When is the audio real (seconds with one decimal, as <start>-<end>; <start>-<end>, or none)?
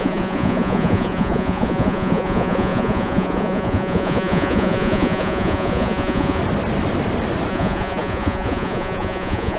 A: 6.4-7.5